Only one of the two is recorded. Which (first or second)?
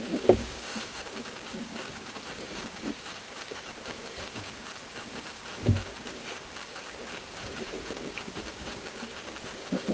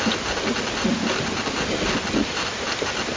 second